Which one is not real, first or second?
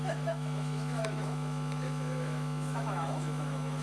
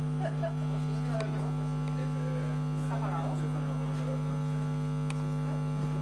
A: first